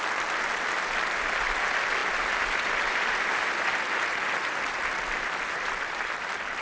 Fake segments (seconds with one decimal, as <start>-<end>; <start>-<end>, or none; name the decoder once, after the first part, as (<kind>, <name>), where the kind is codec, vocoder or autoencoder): none